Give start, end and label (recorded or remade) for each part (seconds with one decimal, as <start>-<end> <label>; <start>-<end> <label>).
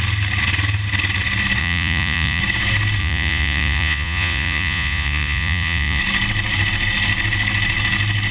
0.0-1.6 recorded; 1.6-2.4 remade; 2.4-3.0 recorded; 3.0-6.0 remade; 6.0-8.3 recorded